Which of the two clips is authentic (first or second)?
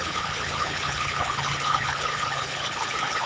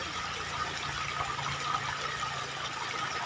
second